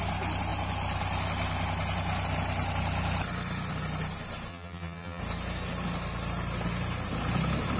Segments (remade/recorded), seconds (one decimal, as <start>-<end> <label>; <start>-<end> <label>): 0.0-4.5 recorded; 4.5-5.2 remade; 5.2-7.8 recorded